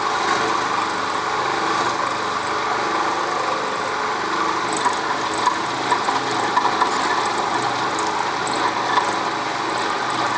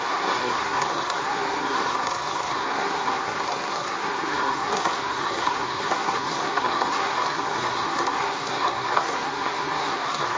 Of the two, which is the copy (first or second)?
second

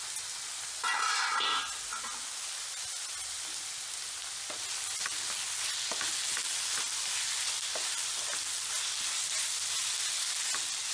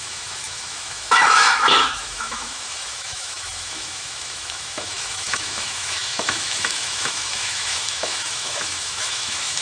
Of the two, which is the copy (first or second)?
second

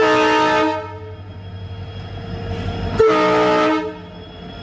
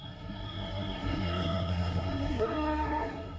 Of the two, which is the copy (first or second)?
second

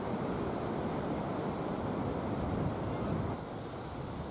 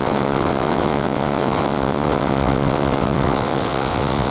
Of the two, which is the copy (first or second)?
second